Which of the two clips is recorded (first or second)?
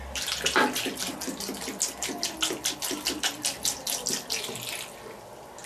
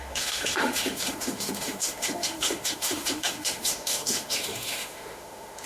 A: first